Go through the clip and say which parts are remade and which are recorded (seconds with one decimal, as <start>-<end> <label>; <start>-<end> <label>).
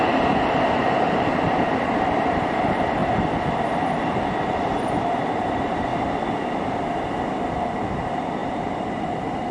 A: 0.0-3.0 remade; 3.0-4.1 recorded; 4.1-5.9 remade; 5.9-7.5 recorded; 7.5-9.5 remade